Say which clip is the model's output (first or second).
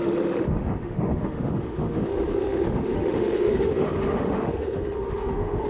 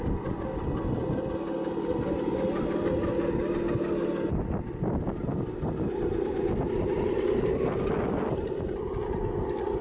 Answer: first